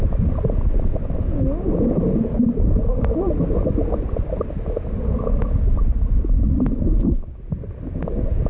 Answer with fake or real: real